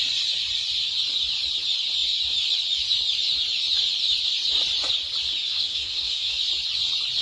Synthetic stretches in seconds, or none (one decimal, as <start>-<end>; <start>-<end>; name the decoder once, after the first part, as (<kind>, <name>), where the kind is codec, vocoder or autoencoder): 5.5-6.4 (codec, SNAC)

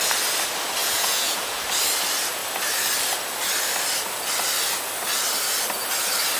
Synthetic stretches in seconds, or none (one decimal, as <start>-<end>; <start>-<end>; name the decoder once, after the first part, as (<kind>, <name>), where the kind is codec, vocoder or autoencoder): 0.8-1.6 (vocoder, Vocos)

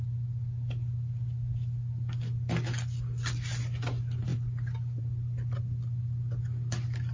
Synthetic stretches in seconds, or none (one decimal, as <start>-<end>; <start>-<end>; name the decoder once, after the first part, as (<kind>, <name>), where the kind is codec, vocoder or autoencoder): none

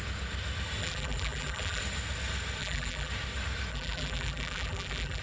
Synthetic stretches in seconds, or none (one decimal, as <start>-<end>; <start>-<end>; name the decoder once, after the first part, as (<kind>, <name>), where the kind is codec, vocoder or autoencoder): 0.8-1.8 (vocoder, BigVGAN v2); 2.6-3.1; 3.7-5.2

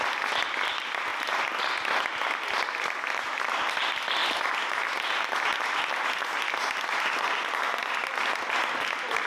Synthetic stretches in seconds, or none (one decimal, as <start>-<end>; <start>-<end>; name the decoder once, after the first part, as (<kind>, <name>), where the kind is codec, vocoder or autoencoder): none